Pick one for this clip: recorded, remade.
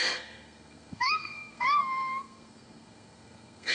remade